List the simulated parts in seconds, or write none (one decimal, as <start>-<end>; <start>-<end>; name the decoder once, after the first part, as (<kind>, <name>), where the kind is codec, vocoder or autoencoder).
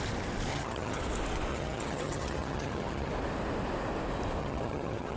0.5-1.0 (vocoder, HiFi-GAN); 1.5-3.1; 4.4-5.2